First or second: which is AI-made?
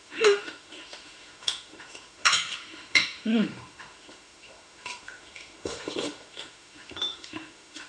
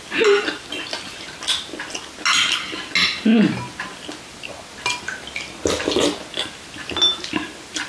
first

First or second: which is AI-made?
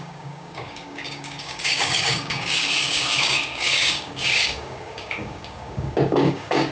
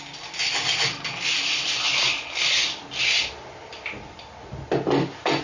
first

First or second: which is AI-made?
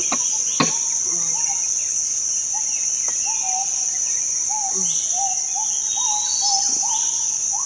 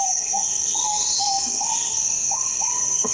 second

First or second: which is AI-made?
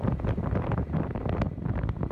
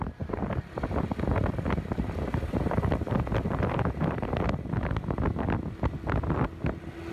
first